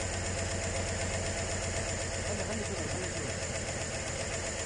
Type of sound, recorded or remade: recorded